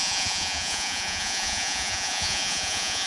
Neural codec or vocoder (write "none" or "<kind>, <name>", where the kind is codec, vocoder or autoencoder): vocoder, Vocos